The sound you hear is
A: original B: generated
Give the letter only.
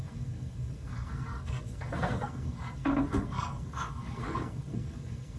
B